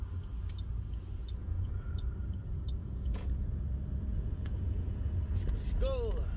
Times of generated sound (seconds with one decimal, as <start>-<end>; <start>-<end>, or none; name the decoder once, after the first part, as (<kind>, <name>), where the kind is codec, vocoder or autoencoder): 1.4-1.9 (vocoder, Vocos); 2.8-3.6; 4.1-5.1